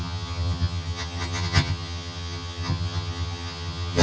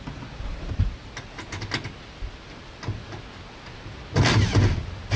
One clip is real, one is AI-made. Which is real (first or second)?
second